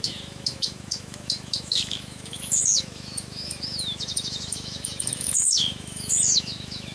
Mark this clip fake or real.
fake